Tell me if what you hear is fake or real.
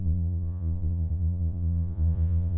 fake